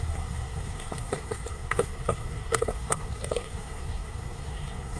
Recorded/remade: remade